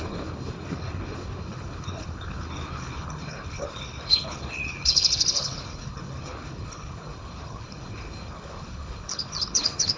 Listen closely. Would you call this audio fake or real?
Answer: fake